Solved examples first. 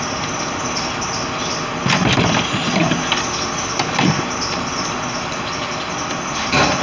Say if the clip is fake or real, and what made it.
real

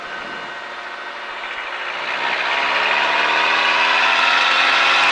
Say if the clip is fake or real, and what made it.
real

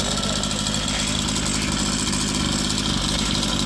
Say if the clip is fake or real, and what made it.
real